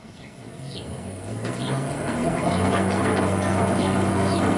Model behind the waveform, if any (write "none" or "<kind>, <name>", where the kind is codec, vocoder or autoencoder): codec, SNAC